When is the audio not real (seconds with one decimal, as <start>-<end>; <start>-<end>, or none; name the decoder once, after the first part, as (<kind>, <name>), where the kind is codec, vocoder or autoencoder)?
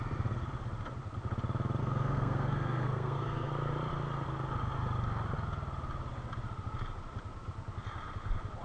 1.8-3.5 (codec, SNAC)